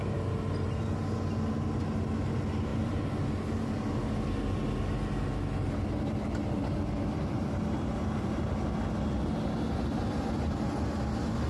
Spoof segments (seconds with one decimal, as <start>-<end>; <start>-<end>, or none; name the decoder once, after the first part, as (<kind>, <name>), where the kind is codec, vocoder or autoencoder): 2.7-4.7 (vocoder, BigVGAN v2)